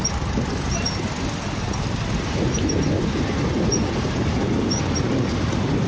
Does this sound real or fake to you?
real